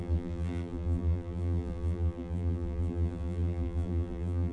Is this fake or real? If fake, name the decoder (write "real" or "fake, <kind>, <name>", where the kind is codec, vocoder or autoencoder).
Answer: fake, vocoder, BigVGAN v2